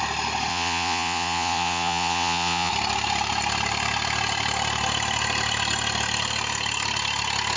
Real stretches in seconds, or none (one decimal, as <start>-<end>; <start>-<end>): 0.0-0.5; 2.7-7.6